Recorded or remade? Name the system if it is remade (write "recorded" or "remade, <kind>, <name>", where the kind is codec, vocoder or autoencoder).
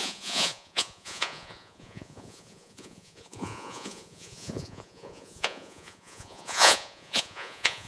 remade, vocoder, Vocos